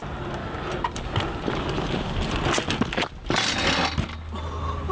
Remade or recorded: recorded